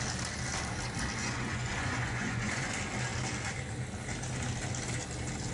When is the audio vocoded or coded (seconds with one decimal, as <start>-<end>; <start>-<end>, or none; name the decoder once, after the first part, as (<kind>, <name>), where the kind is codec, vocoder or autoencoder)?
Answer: 1.2-2.7 (vocoder, Vocos)